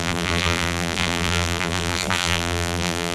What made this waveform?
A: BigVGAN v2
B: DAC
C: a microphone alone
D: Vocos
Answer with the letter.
A